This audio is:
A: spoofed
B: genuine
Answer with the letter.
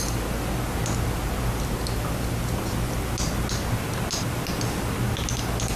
B